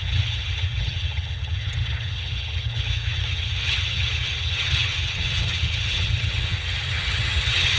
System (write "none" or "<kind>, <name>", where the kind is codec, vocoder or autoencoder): vocoder, HiFi-GAN